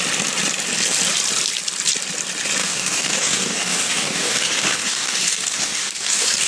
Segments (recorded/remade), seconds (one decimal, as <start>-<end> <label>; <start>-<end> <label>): 0.0-2.6 recorded; 2.6-6.5 remade